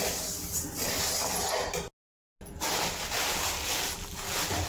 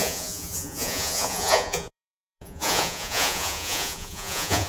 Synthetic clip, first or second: second